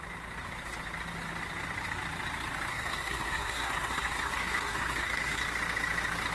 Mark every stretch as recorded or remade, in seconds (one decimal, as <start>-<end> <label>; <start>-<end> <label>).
0.0-2.7 recorded; 2.7-5.4 remade; 5.4-6.3 recorded